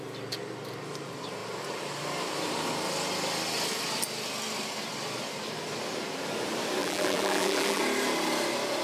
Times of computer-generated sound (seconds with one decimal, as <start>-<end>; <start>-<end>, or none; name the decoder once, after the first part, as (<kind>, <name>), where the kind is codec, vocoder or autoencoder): 6.8-7.8 (vocoder, BigVGAN v2)